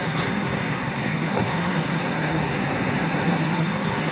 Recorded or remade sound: remade